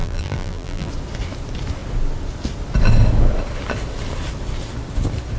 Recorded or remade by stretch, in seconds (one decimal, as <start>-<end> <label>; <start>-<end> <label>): 0.0-0.9 remade; 0.9-5.4 recorded